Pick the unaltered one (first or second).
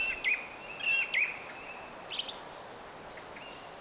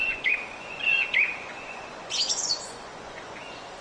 first